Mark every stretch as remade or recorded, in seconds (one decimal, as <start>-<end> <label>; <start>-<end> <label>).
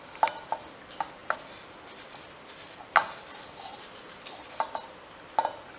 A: 0.0-5.8 recorded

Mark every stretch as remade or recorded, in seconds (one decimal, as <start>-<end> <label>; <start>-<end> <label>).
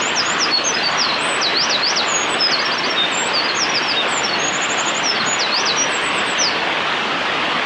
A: 0.0-7.7 recorded